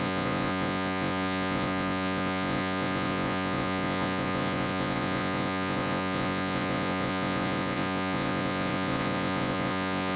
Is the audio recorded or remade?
remade